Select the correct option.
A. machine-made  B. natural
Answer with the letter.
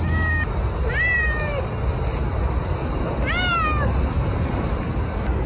B